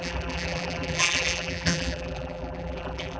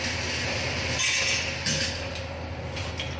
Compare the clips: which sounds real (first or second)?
second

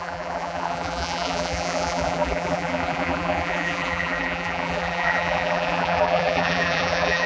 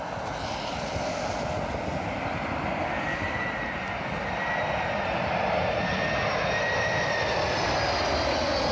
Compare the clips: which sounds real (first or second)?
second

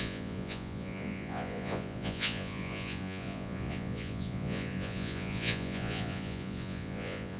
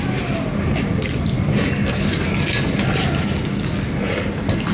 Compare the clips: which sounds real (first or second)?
second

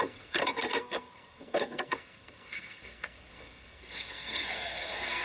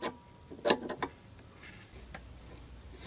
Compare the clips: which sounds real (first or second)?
second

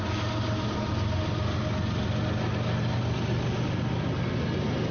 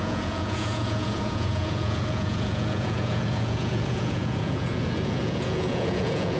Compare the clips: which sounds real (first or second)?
first